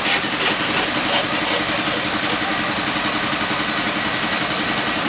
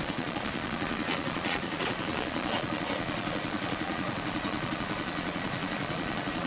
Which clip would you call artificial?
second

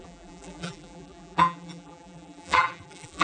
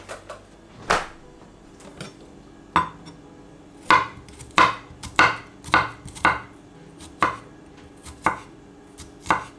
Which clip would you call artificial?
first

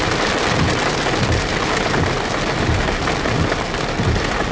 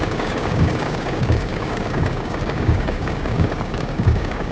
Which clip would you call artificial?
second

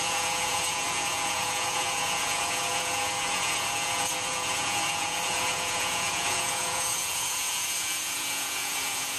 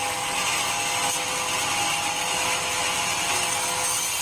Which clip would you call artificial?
first